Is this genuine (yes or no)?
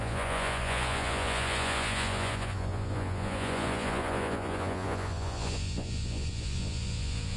no